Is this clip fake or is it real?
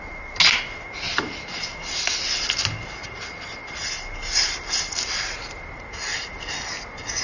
real